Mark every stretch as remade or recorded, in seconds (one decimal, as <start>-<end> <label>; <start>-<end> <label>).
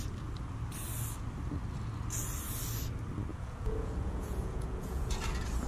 0.0-3.3 recorded; 3.3-5.1 remade; 5.1-5.7 recorded